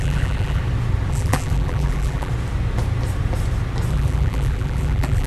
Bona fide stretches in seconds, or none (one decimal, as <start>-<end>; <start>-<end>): 0.6-1.1; 2.3-3.9